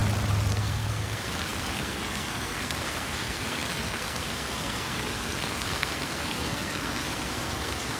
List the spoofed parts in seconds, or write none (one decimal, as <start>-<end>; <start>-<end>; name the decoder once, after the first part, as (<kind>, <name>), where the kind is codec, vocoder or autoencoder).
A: 0.5-8.0 (codec, SNAC)